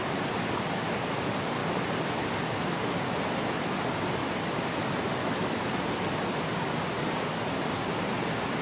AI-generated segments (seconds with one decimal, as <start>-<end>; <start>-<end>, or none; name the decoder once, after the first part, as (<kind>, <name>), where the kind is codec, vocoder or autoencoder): none